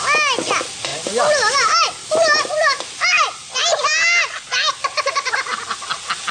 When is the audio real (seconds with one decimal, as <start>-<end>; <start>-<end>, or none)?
0.0-6.3